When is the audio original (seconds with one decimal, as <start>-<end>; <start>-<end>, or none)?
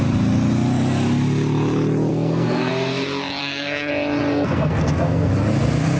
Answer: 0.0-2.1; 2.7-3.4; 3.9-4.3; 5.3-6.0